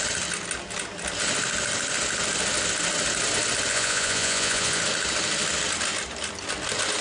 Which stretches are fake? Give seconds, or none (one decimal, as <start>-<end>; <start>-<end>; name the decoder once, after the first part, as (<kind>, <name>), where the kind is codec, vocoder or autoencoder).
3.7-4.8 (vocoder, Vocos)